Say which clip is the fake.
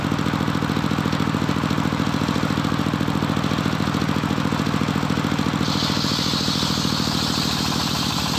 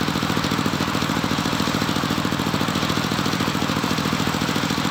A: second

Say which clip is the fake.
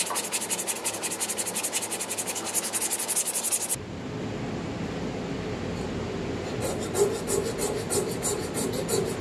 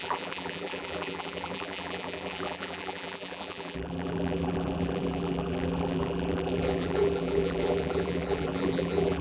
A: second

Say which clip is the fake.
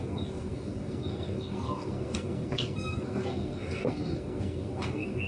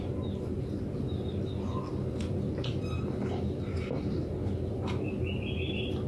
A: first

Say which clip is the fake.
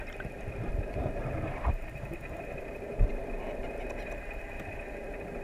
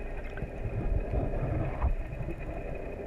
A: first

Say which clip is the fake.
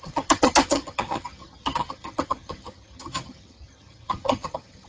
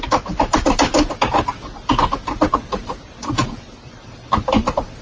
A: first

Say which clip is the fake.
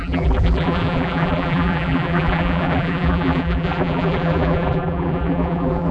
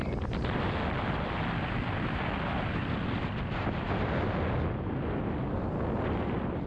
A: first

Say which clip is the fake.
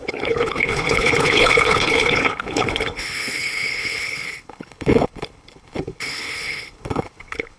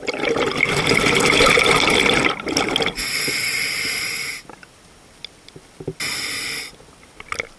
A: first